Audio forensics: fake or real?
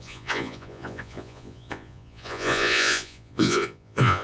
fake